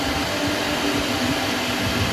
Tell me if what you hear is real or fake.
fake